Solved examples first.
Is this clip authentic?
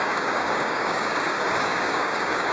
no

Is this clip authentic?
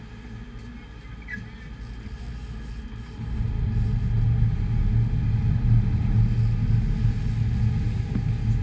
yes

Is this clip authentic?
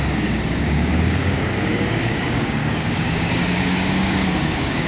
no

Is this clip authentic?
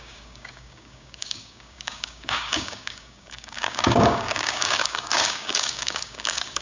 no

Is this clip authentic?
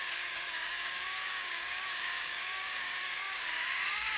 no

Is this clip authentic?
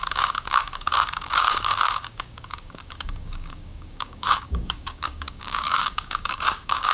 no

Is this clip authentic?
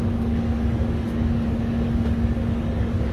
no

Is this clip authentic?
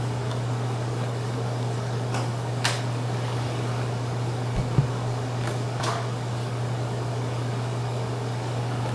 no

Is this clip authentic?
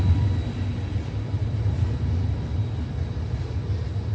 yes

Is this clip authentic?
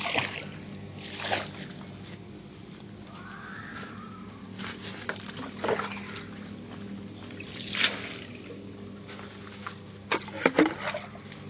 yes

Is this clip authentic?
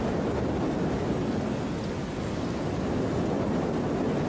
yes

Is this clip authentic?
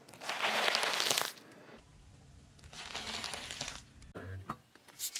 yes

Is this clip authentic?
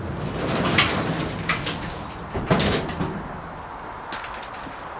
yes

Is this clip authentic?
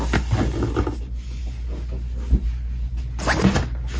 yes